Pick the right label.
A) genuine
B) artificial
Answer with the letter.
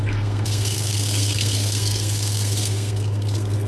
B